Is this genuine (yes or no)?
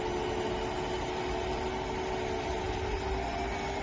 yes